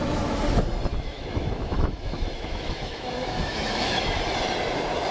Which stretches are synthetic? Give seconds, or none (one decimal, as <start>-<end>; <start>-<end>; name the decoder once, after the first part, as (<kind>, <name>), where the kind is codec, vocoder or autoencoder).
0.9-4.0 (autoencoder, DAC-VAE)